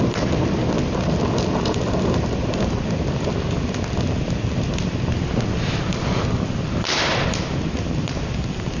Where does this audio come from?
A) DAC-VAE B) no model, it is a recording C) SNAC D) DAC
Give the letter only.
B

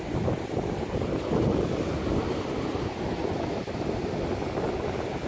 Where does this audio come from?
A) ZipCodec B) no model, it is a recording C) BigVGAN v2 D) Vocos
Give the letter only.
B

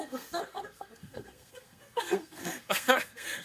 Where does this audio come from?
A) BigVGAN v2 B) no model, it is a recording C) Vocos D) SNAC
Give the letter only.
D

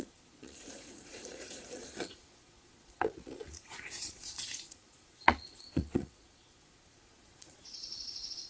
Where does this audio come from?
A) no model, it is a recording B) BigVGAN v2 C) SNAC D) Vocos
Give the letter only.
D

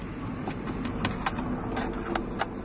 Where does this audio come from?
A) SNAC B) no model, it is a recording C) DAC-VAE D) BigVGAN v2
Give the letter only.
B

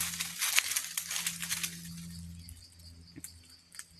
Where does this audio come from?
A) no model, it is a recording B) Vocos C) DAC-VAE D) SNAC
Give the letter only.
A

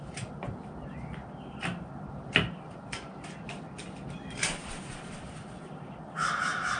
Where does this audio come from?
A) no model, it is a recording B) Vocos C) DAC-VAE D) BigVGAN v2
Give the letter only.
A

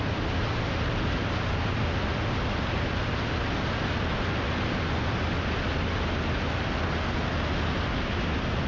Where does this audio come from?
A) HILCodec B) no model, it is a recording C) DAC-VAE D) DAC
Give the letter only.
B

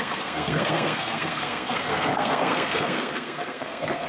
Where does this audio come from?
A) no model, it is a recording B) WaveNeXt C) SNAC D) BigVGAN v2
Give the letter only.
C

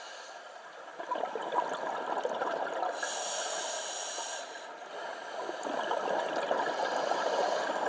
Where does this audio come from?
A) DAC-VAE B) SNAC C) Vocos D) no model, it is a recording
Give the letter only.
D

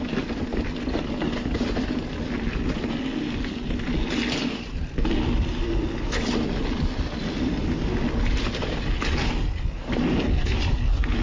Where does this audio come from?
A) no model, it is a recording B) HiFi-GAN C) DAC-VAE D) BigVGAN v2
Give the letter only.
A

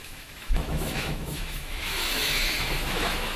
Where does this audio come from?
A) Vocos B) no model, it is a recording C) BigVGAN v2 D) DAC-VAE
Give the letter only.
D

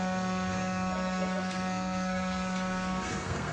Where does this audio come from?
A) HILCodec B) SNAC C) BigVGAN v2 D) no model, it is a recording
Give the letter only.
B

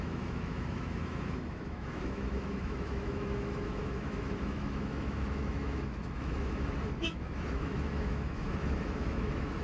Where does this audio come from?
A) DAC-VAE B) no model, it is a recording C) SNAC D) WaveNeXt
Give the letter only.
A